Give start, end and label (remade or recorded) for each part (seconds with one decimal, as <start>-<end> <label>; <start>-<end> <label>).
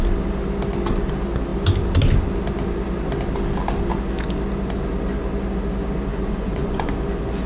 0.0-6.1 recorded; 6.1-6.9 remade; 6.9-7.5 recorded